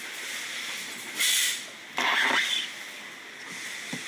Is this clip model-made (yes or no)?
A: no